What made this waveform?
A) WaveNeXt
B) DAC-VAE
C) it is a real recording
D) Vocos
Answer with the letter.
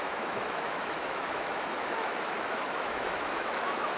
B